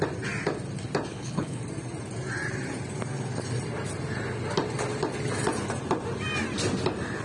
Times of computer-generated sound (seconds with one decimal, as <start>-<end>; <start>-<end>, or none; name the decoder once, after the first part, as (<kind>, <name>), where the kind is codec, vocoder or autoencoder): 1.1-1.6 (codec, HILCodec)